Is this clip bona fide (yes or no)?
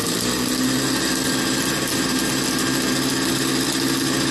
yes